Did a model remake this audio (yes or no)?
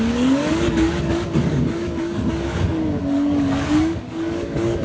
yes